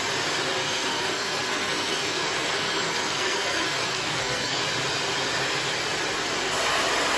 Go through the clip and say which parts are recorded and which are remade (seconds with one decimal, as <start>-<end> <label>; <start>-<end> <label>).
0.0-0.6 recorded; 0.6-4.6 remade; 4.6-7.2 recorded